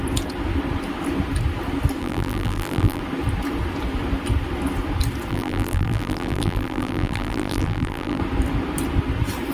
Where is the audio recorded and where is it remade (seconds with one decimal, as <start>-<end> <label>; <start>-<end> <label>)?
0.0-2.0 recorded; 2.0-3.0 remade; 3.0-5.3 recorded; 5.3-8.2 remade; 8.2-9.5 recorded